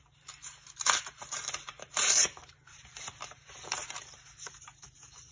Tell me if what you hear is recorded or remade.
remade